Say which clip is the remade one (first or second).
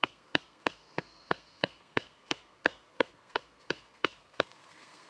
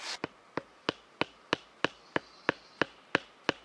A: first